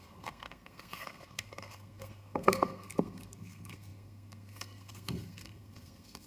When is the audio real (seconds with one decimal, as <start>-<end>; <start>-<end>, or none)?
none